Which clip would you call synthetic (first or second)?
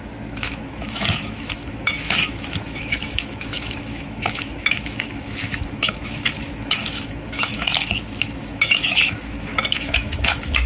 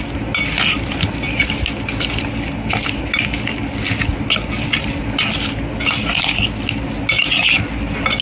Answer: first